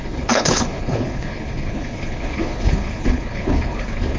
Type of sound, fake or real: fake